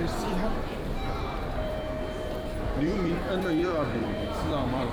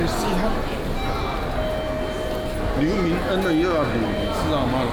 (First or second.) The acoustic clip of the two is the second